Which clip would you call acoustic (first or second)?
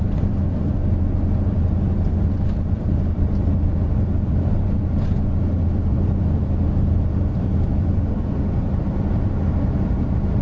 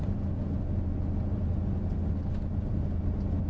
second